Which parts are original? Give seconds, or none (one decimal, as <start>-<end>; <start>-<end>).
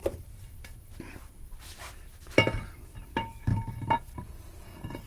0.0-3.1; 3.5-5.1